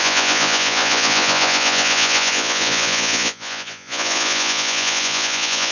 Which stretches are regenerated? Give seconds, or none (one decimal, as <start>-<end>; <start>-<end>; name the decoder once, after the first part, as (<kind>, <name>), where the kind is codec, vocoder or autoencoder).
0.0-5.7 (vocoder, Vocos)